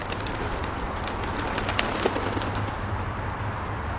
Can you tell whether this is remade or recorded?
recorded